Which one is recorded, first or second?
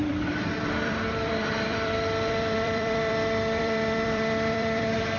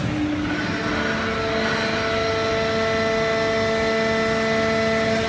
second